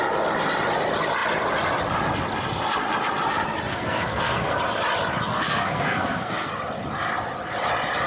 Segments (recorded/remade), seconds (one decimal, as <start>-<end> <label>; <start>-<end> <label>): 0.0-3.7 recorded; 3.7-4.6 remade; 4.6-5.3 recorded; 5.3-6.5 remade; 6.5-8.1 recorded